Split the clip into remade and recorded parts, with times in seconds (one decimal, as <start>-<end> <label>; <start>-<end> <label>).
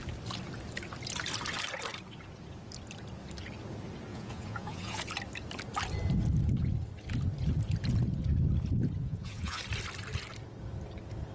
0.0-4.1 recorded; 4.1-5.0 remade; 5.0-9.0 recorded; 9.0-9.6 remade; 9.6-11.3 recorded